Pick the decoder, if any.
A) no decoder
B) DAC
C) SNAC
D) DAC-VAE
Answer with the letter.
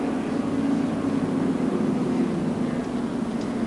A